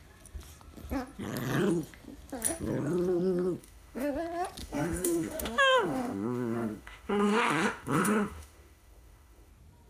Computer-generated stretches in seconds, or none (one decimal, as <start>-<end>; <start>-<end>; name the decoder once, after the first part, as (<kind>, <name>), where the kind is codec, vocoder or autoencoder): 3.6-4.1 (autoencoder, DAC-VAE); 4.6-9.5